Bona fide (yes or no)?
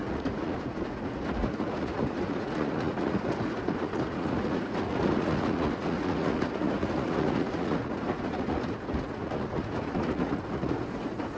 no